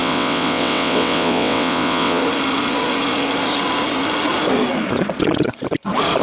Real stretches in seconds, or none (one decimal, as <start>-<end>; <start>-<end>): 2.2-6.2